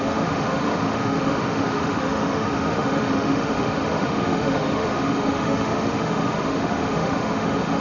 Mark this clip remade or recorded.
remade